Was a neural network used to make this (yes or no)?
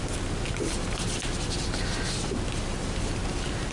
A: no